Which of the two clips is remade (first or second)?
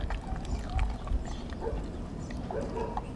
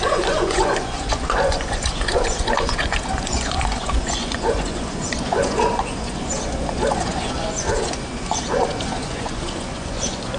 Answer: second